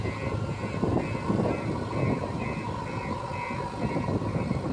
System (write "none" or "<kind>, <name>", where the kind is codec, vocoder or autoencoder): none